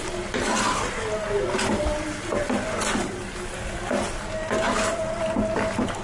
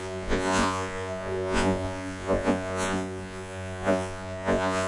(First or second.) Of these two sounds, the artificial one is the second